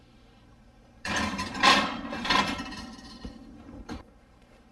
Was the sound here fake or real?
fake